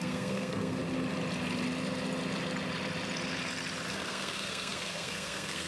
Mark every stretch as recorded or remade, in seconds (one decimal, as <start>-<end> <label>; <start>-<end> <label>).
0.0-0.8 remade; 0.8-3.9 recorded; 3.9-5.7 remade